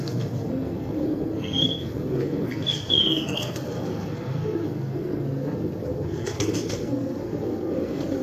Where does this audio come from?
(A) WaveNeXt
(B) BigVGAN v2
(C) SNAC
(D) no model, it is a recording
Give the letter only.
C